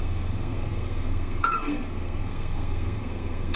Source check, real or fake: fake